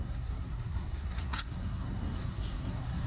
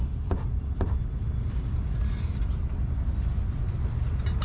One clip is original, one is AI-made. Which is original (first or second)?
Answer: second